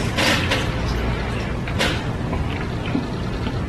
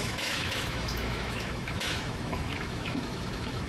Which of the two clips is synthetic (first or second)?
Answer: second